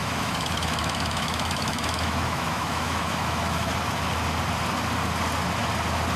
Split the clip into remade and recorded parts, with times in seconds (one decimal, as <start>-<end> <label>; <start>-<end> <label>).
0.0-3.7 remade; 3.7-6.2 recorded